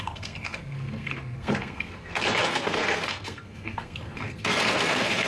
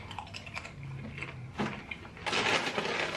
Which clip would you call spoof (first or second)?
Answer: first